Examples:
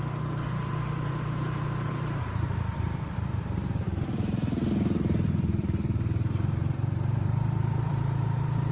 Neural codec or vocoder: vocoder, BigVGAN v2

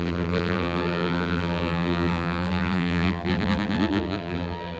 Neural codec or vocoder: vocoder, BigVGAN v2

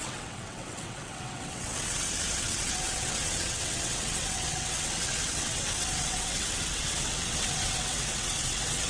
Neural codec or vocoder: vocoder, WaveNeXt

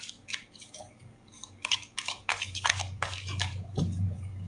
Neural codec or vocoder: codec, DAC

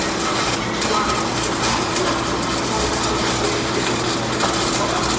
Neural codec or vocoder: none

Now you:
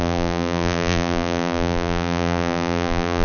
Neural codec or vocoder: vocoder, BigVGAN v2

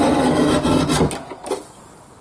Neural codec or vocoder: none